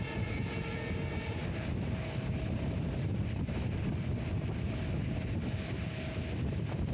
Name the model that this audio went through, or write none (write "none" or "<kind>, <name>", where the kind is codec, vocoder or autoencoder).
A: none